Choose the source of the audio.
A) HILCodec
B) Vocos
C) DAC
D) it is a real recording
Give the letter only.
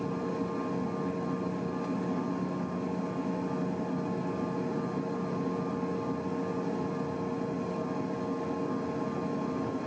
D